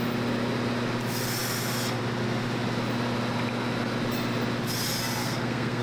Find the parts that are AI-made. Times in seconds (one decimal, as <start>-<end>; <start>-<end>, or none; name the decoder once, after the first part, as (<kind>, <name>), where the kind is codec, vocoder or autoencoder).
5.2-5.8 (codec, SNAC)